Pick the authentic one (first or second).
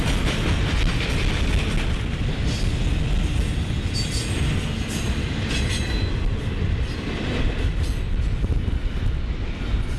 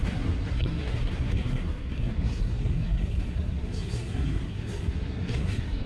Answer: first